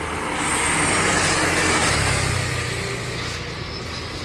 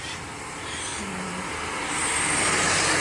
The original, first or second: first